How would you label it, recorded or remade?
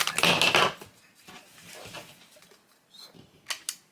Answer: recorded